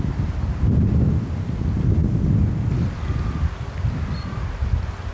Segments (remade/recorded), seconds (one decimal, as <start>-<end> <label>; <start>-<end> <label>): 0.0-5.1 recorded